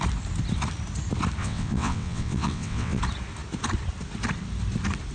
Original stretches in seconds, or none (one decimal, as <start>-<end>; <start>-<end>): 0.0-1.4; 3.0-5.1